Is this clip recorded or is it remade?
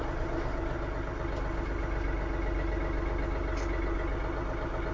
recorded